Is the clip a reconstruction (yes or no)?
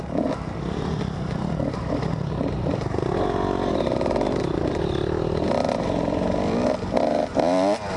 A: no